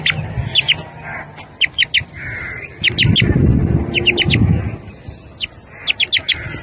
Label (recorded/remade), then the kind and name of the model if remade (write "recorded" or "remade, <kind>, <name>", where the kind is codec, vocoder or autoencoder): recorded